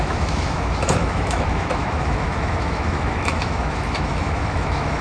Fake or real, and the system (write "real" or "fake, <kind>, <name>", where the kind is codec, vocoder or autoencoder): fake, autoencoder, DAC-VAE